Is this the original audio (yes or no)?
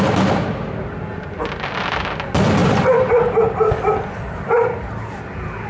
yes